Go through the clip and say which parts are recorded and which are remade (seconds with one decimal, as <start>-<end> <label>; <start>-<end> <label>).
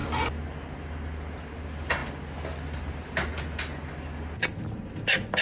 0.0-5.4 recorded